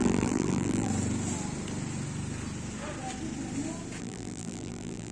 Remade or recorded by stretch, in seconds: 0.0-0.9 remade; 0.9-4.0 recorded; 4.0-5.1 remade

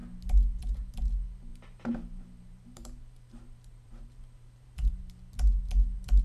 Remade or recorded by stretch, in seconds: 0.0-1.5 recorded; 1.5-5.0 remade; 5.0-6.2 recorded